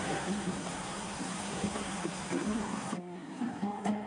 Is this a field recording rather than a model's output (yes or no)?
no